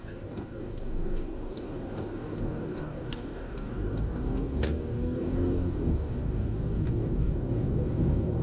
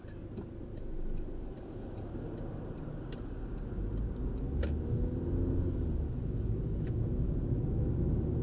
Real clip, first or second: second